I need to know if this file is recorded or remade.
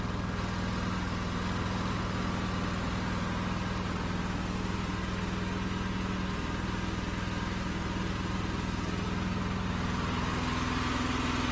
recorded